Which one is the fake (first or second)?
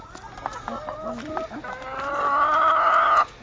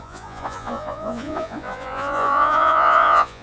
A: second